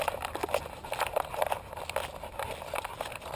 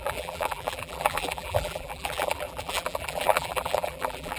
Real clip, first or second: first